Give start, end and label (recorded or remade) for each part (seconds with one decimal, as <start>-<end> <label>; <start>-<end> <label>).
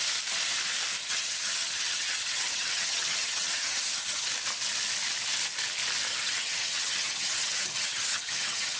0.0-1.0 recorded; 1.0-4.3 remade; 4.3-6.1 recorded; 6.1-8.8 remade